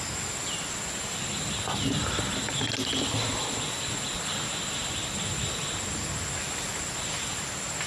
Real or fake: real